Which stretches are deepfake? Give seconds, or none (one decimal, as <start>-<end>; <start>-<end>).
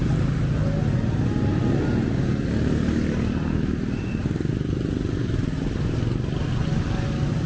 none